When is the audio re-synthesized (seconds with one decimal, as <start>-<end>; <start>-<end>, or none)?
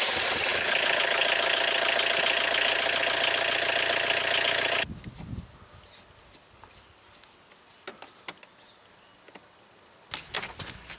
none